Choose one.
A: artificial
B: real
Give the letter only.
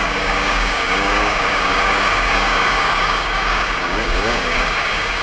A